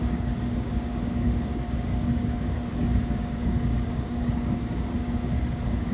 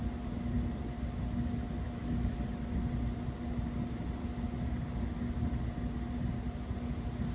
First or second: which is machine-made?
first